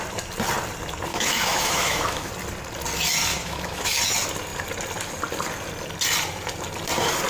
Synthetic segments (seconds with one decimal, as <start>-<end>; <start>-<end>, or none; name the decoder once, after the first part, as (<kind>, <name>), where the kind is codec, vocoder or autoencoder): 1.1-2.3 (autoencoder, DAC-VAE); 3.3-4.0